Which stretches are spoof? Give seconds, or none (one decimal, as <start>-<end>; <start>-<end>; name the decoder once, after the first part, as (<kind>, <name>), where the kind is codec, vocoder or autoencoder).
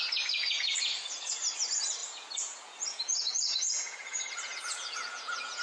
2.0-5.6 (vocoder, Vocos)